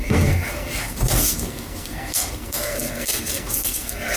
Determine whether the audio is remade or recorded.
remade